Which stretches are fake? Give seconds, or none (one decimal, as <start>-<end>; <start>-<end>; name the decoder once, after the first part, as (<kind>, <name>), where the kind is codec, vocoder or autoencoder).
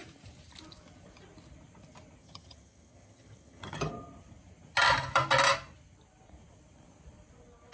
2.2-3.9 (vocoder, HiFi-GAN)